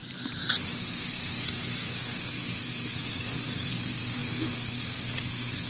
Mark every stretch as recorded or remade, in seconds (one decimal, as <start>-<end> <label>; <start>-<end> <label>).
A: 0.0-0.8 recorded; 0.8-5.7 remade